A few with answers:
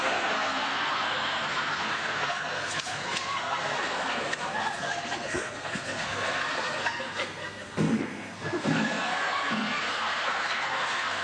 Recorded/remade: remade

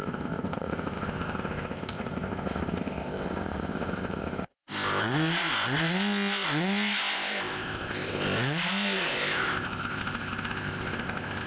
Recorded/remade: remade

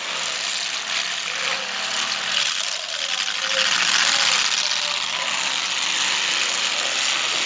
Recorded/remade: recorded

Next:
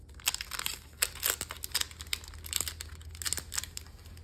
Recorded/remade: recorded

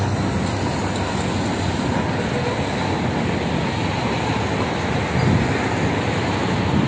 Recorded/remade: recorded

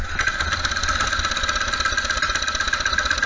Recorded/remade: recorded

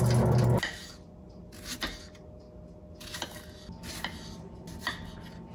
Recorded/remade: recorded